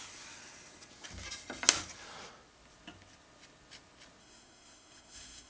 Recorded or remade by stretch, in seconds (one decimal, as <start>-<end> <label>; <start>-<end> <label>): 0.0-4.2 recorded; 4.2-5.5 remade